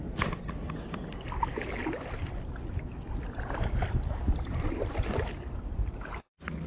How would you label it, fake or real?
real